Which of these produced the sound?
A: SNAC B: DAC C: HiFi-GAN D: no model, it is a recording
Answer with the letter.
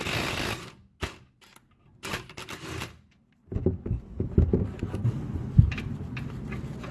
D